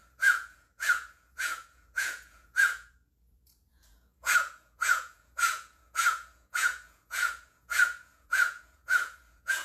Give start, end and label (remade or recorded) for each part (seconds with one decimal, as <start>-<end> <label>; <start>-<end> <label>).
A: 0.0-9.6 remade

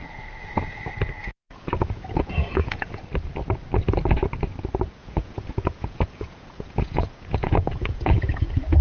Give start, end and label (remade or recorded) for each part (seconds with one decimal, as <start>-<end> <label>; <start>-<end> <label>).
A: 0.0-1.2 recorded; 1.2-3.0 remade; 3.0-5.0 recorded; 5.0-8.8 remade

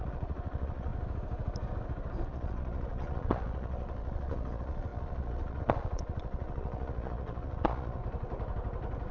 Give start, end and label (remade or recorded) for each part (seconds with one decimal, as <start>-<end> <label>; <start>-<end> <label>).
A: 0.0-0.9 remade; 0.9-2.3 recorded; 2.3-8.0 remade; 8.0-9.1 recorded

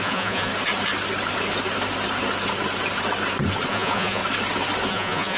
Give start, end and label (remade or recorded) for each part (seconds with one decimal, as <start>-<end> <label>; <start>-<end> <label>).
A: 0.0-0.5 remade; 0.5-3.7 recorded; 3.7-4.2 remade; 4.2-4.9 recorded; 4.9-5.4 remade

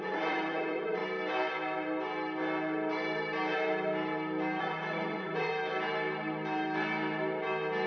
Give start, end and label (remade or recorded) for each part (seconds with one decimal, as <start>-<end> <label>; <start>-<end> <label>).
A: 0.0-1.0 remade; 1.0-4.6 recorded; 4.6-5.5 remade; 5.5-7.9 recorded